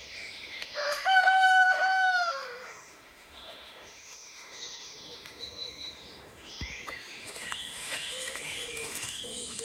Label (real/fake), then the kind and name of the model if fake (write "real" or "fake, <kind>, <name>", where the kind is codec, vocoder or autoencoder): fake, autoencoder, DAC-VAE